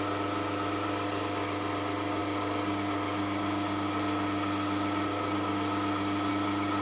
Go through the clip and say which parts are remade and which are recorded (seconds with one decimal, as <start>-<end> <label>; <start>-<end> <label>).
0.0-6.8 recorded